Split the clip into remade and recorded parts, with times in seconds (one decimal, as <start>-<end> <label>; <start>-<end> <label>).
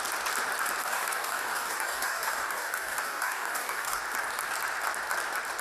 0.0-0.8 recorded; 0.8-4.0 remade; 4.0-5.6 recorded